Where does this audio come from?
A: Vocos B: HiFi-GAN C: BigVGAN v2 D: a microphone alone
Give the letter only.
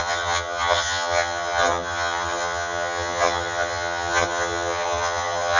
B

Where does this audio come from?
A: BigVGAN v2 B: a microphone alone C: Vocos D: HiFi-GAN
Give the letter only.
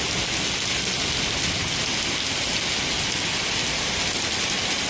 B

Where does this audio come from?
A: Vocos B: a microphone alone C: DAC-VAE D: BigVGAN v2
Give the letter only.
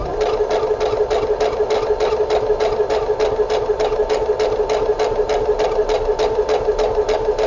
B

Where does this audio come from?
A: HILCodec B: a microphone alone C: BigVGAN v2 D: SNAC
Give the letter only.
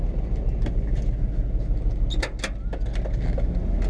B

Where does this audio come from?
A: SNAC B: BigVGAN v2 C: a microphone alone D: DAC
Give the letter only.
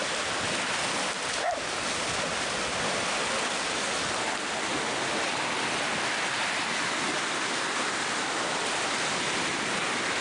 C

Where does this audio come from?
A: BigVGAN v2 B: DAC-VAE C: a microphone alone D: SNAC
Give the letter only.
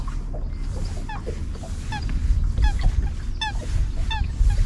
C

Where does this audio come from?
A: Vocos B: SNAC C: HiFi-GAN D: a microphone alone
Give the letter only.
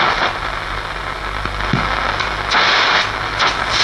D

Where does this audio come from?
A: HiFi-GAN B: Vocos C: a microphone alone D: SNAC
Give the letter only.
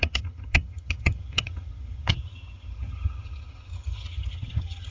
A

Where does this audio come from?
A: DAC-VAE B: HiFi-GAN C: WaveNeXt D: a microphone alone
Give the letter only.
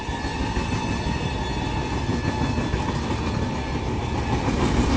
D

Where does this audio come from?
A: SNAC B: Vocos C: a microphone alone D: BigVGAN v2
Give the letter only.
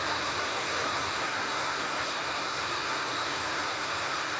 A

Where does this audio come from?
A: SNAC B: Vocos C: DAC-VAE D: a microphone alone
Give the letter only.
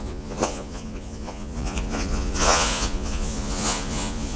B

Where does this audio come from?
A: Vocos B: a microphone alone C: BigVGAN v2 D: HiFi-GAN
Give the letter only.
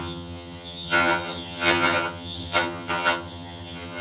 D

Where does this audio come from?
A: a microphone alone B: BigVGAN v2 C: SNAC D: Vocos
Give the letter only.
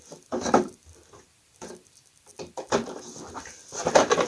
B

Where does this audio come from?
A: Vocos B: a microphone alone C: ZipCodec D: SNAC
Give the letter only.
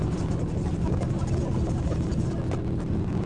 B